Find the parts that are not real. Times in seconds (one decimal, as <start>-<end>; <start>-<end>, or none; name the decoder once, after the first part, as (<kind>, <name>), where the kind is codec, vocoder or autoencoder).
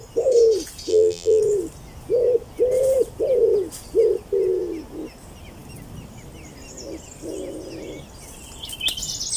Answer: 0.9-1.4 (vocoder, BigVGAN v2)